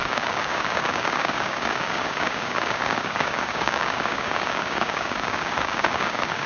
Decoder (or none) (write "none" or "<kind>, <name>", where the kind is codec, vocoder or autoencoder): codec, DAC